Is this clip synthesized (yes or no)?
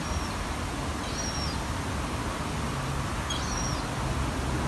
no